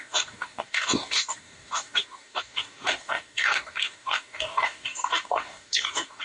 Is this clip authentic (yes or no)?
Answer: no